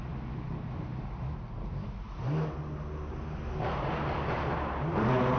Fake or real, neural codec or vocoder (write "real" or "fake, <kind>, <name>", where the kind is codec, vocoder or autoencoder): real